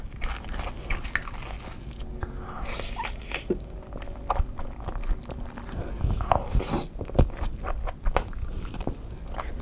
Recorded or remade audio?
recorded